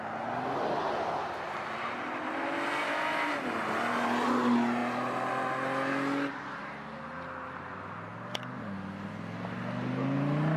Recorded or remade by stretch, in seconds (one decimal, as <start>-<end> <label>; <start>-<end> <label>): 0.0-10.6 recorded